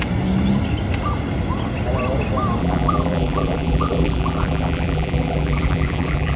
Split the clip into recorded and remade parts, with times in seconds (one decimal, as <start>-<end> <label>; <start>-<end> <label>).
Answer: 0.0-2.6 recorded; 2.6-6.4 remade